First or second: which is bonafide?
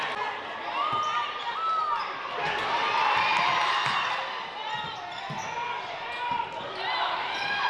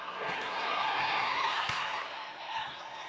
first